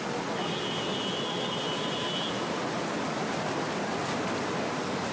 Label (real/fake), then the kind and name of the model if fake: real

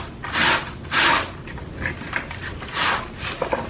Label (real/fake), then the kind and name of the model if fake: real